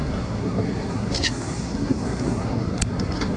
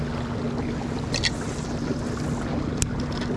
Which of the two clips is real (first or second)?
second